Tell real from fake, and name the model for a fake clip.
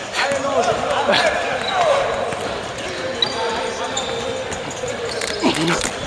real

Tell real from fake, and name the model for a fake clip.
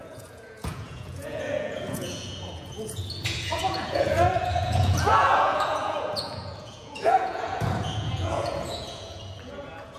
fake, vocoder, Vocos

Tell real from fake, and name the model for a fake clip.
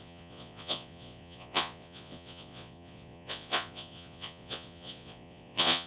fake, vocoder, Vocos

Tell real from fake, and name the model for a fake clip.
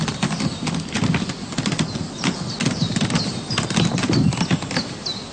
real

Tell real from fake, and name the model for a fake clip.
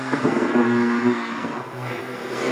fake, codec, SNAC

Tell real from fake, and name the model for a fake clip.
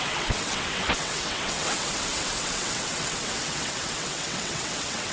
fake, vocoder, WaveNeXt